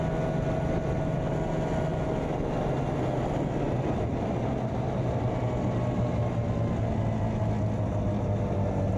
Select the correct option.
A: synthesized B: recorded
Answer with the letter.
B